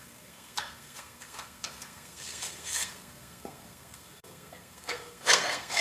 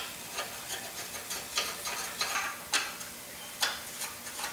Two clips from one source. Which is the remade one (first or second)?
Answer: first